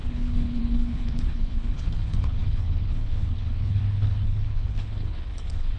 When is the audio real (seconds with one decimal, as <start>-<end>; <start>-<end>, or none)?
none